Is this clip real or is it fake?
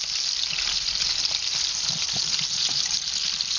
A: real